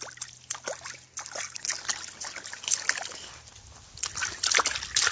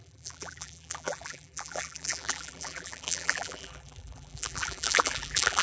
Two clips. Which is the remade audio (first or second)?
second